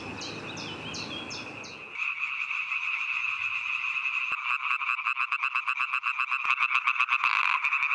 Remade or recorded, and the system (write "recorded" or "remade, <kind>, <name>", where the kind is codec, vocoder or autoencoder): recorded